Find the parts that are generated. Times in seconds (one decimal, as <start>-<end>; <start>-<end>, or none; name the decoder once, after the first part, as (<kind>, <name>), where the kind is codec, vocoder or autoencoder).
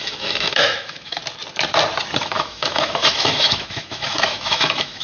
0.0-1.2 (autoencoder, DAC-VAE); 2.2-5.0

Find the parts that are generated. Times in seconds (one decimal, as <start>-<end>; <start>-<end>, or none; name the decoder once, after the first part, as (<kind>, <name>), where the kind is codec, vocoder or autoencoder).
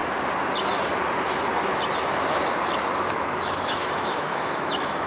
3.1-5.1 (autoencoder, DAC-VAE)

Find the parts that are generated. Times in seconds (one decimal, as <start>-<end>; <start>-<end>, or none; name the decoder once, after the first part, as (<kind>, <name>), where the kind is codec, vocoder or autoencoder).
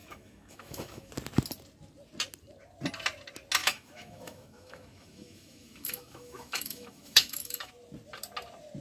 0.0-1.1 (autoencoder, DAC-VAE); 3.6-7.7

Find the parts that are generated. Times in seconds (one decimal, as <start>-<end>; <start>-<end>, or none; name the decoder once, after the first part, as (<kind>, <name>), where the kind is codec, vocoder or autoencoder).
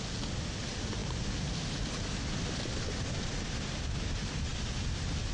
none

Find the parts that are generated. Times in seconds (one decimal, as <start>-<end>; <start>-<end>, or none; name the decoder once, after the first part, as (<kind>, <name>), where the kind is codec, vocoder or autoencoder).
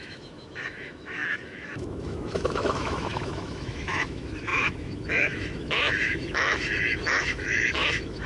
0.0-8.3 (autoencoder, DAC-VAE)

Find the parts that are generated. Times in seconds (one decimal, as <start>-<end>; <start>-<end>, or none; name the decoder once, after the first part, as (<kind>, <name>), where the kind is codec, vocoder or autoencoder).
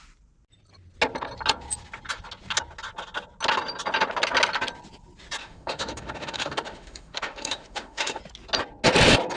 5.4-8.2 (autoencoder, DAC-VAE)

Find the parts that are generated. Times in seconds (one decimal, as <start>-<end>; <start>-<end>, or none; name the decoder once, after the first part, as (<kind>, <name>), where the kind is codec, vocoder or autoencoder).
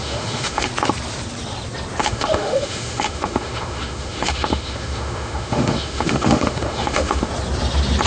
0.0-0.7 (autoencoder, DAC-VAE); 2.0-7.3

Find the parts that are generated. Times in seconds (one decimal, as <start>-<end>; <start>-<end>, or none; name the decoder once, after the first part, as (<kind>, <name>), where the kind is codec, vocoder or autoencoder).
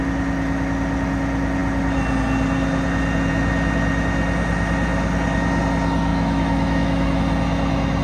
6.1-7.2 (autoencoder, DAC-VAE)